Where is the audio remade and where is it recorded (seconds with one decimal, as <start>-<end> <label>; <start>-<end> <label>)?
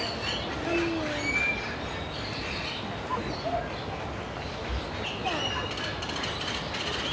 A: 0.0-7.1 recorded